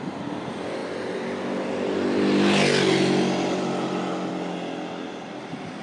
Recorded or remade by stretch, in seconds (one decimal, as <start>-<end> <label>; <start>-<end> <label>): 0.0-5.8 recorded